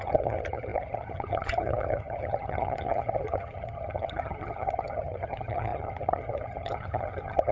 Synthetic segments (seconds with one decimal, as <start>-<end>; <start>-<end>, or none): 0.0-7.5